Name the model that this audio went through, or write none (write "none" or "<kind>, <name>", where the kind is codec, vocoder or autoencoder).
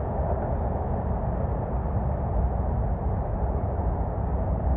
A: none